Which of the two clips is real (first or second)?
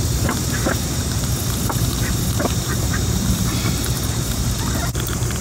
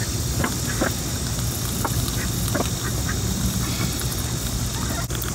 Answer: second